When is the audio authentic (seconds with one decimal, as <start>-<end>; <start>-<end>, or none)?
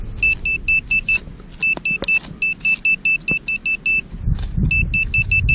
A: 0.0-5.5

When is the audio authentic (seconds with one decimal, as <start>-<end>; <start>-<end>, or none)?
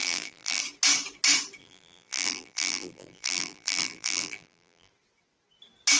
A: 0.6-1.6; 4.9-6.0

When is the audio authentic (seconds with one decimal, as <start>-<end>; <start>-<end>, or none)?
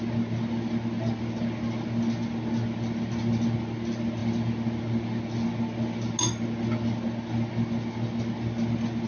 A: 0.0-9.1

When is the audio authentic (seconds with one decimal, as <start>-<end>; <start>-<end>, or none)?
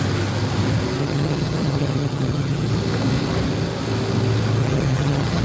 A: 0.0-1.0; 2.7-4.6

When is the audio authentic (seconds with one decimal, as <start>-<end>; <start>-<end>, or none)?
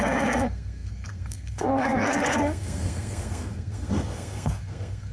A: none